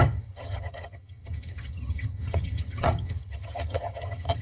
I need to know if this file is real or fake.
fake